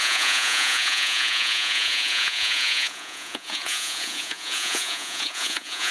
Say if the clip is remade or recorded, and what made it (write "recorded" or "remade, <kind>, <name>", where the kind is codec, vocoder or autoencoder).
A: remade, vocoder, Vocos